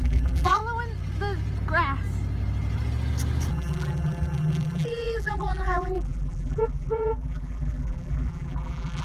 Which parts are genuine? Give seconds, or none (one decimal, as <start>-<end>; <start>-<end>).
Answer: 0.6-3.5